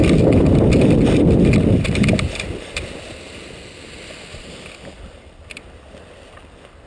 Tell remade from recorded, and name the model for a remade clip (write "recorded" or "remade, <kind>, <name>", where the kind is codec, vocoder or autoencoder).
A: recorded